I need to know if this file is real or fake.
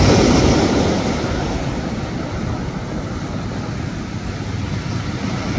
real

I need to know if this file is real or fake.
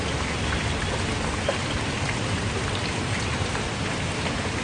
real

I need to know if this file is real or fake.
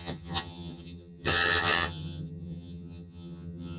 fake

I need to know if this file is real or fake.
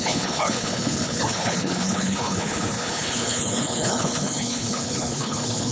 fake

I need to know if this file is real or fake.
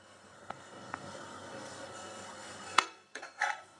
fake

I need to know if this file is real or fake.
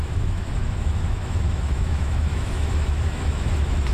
fake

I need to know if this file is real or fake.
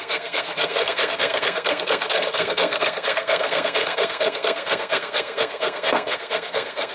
fake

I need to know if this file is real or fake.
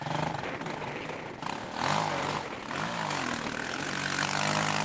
real